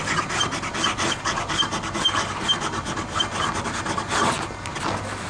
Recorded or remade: recorded